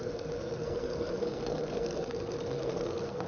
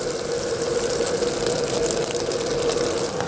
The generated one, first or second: first